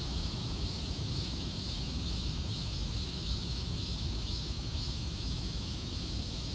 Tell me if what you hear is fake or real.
fake